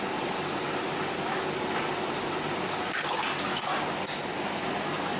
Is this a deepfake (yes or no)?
no